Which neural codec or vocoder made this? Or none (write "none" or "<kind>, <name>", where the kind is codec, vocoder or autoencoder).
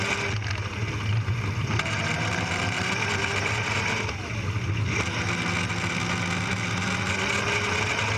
none